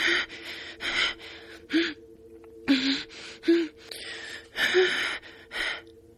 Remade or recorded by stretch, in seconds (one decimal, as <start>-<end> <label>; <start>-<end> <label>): 0.0-6.2 recorded